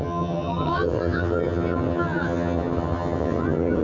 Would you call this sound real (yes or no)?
no